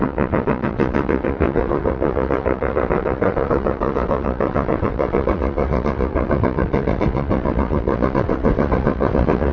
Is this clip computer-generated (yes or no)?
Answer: yes